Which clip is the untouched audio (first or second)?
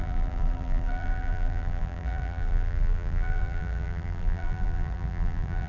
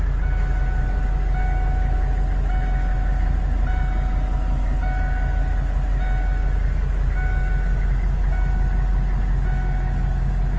second